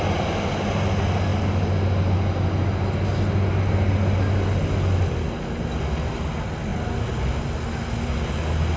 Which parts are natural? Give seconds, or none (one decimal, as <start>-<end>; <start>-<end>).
0.0-8.8

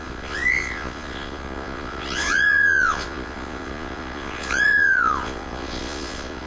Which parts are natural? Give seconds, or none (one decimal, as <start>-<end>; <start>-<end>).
none

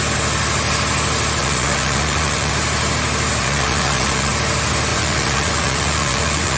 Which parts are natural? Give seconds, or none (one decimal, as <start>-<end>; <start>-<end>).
0.0-1.4; 2.5-3.4; 4.3-4.9

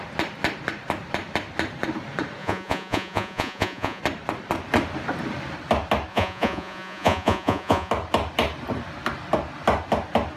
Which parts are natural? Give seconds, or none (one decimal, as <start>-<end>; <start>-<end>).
0.0-2.4; 4.0-6.1; 7.9-10.4

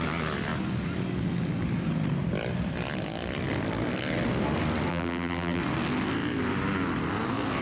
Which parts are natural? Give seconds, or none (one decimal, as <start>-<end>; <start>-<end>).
0.0-4.9; 5.6-7.6

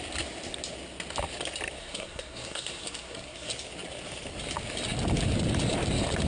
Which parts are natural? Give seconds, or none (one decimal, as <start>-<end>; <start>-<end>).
0.0-1.8; 3.5-6.3